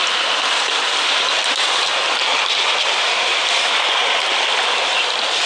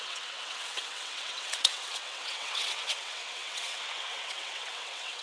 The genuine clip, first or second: first